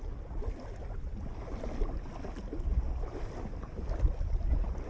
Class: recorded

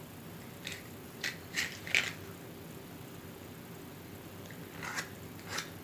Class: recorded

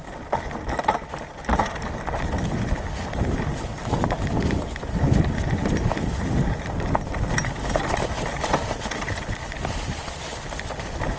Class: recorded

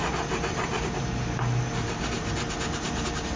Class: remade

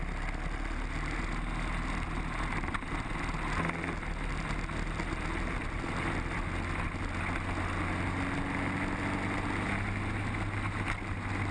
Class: recorded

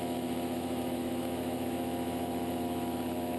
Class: remade